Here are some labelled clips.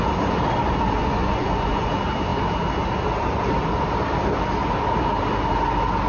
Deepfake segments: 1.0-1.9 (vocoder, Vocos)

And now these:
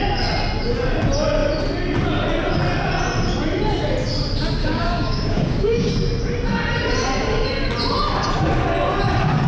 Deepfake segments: 4.6-5.9 (codec, DAC)

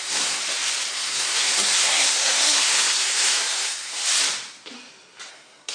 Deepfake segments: 0.0-0.4 (codec, SNAC); 0.9-4.0; 5.3-5.7

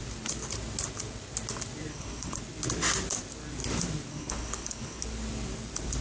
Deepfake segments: 1.9-2.4 (codec, HILCodec); 4.1-5.0

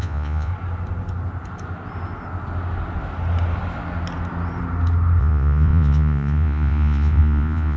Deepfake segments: 0.0-0.5 (vocoder, Vocos); 5.2-7.8

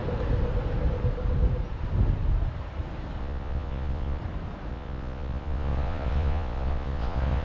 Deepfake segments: 3.2-4.2 (vocoder, Vocos); 4.7-7.4